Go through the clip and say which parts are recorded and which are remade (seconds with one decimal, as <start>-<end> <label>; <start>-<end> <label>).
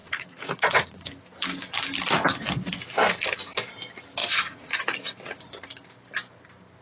0.0-1.1 remade; 1.1-4.2 recorded; 4.2-5.4 remade; 5.4-6.8 recorded